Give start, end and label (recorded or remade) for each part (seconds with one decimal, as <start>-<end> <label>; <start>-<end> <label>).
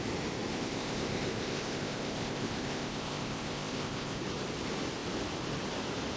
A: 0.0-0.5 recorded; 0.5-4.2 remade; 4.2-6.2 recorded